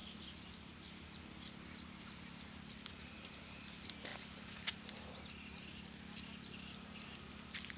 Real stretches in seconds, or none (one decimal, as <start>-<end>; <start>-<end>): 0.0-7.8